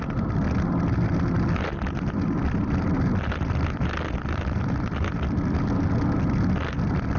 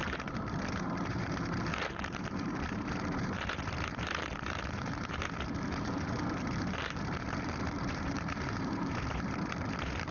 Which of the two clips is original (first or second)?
first